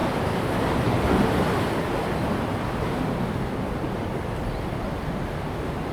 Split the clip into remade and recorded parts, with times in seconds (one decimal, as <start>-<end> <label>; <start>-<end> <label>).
0.0-5.9 recorded